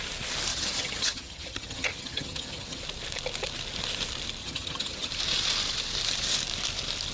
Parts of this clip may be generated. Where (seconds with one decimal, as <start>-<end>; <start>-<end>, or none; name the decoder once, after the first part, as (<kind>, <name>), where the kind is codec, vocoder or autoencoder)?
0.5-2.8 (vocoder, HiFi-GAN); 4.4-5.1